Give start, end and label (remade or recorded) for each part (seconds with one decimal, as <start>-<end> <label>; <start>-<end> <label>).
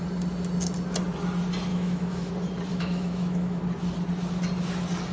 0.0-1.7 recorded; 1.7-2.3 remade; 2.3-2.7 recorded; 2.7-3.6 remade; 3.6-5.1 recorded